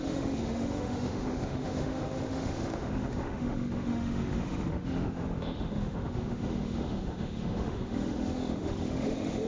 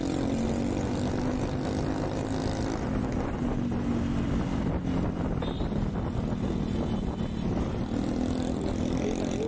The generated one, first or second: first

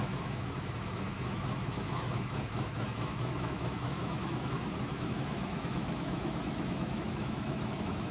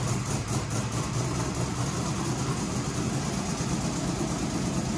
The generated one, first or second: first